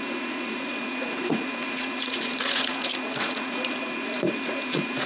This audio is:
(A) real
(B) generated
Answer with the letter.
B